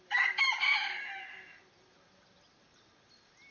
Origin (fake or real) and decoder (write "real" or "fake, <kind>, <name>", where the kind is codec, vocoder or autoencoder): real